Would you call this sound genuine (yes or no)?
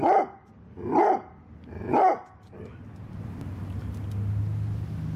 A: yes